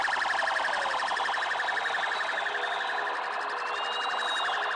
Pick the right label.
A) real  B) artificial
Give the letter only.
A